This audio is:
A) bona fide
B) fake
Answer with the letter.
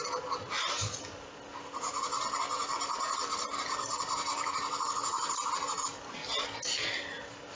A